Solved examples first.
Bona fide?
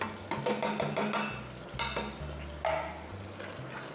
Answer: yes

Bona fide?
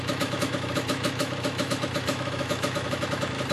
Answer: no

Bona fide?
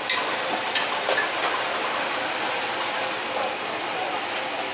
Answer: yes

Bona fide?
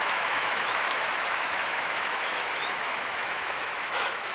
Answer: no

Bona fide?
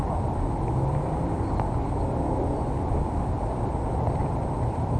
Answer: yes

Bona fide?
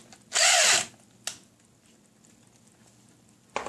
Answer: yes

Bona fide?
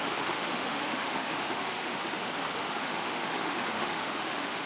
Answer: no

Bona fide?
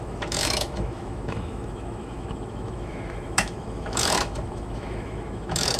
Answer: no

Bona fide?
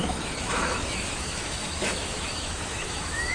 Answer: no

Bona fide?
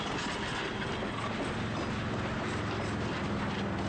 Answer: yes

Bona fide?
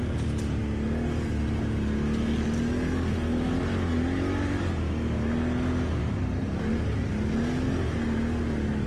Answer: yes